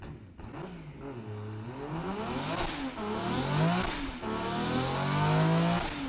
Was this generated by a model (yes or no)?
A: no